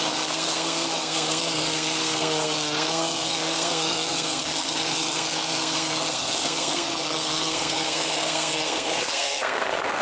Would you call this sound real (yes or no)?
no